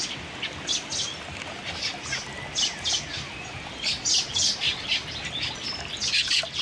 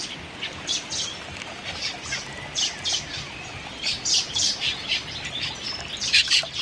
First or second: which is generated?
second